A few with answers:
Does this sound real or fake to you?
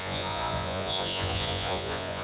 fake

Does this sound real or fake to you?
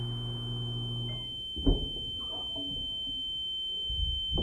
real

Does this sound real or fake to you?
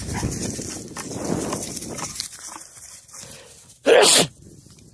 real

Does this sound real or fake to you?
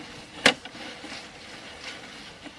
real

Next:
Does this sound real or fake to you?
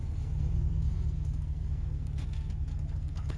fake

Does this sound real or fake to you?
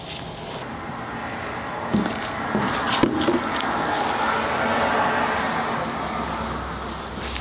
real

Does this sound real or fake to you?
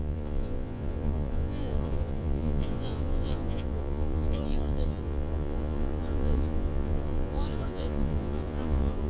fake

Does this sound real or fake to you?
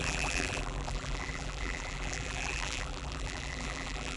fake